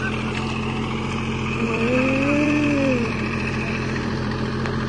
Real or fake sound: fake